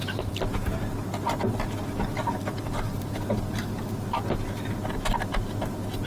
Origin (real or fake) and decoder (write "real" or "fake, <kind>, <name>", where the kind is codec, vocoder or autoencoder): real